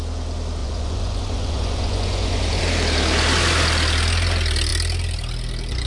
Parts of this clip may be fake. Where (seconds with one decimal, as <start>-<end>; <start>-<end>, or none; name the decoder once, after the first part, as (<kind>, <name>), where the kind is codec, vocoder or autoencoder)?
0.6-2.6 (vocoder, Vocos)